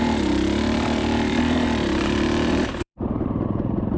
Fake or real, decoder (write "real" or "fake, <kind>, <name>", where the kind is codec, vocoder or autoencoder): fake, vocoder, BigVGAN v2